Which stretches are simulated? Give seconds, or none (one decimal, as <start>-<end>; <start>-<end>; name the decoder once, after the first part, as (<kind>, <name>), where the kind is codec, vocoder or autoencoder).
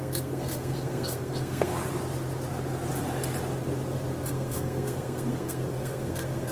0.0-1.7 (codec, SNAC); 4.3-6.5